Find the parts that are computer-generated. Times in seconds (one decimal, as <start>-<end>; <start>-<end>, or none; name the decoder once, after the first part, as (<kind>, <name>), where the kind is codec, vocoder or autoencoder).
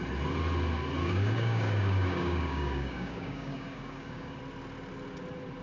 1.0-4.4 (codec, DAC)